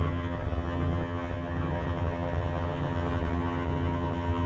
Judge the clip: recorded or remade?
remade